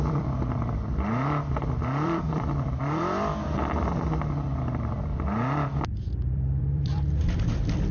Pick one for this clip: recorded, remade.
remade